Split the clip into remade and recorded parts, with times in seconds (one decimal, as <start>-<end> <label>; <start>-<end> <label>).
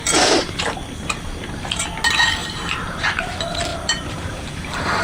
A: 0.0-1.8 remade; 1.8-2.4 recorded; 2.4-3.3 remade; 3.3-3.7 recorded; 3.7-5.0 remade